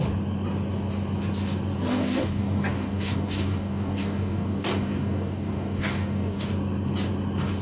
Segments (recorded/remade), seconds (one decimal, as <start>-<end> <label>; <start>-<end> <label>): 0.0-1.9 recorded; 1.9-6.5 remade; 6.5-7.6 recorded